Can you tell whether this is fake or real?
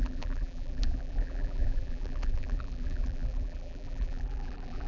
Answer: fake